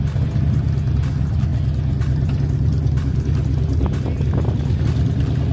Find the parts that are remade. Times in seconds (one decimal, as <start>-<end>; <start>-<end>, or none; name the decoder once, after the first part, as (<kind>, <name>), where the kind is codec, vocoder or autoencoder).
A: none